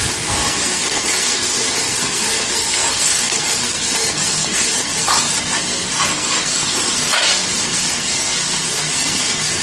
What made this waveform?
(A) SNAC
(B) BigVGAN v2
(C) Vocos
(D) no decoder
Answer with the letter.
A